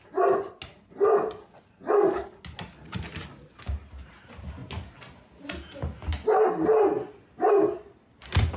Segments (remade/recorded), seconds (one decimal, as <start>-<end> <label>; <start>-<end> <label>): 0.0-8.6 recorded